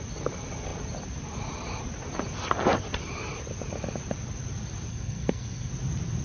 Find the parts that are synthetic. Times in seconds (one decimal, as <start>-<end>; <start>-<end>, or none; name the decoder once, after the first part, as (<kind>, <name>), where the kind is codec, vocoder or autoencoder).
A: 4.9-5.7 (codec, SNAC)